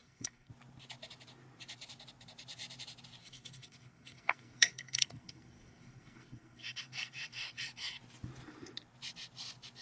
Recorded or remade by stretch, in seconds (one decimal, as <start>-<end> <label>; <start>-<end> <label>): 0.0-0.5 remade; 0.5-3.2 recorded; 3.2-8.0 remade; 8.0-9.8 recorded